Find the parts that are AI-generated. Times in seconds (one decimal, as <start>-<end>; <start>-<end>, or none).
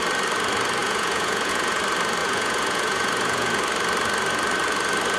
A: 0.8-1.8; 2.2-3.6